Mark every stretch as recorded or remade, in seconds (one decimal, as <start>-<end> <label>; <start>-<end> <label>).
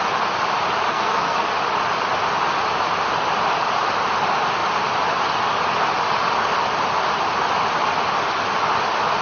0.0-0.9 recorded; 0.9-1.5 remade; 1.5-9.2 recorded